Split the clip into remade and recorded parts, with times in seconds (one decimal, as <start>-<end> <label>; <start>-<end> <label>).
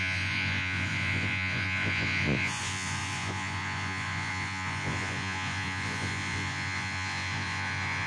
0.0-8.1 remade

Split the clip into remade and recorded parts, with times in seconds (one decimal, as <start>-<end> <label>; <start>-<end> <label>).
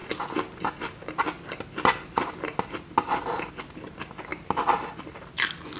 0.0-5.8 recorded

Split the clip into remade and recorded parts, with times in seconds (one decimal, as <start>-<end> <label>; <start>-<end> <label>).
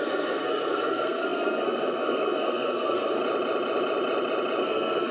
0.0-3.2 remade; 3.2-4.6 recorded; 4.6-5.1 remade